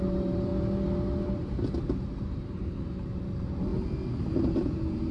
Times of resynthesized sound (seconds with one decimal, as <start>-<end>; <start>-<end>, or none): 0.0-0.5; 1.9-5.1